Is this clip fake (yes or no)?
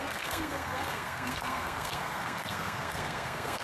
yes